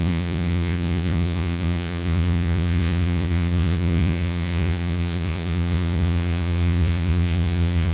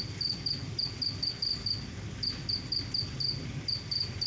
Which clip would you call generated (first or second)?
first